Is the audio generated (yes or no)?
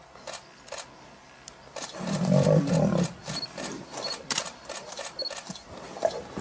no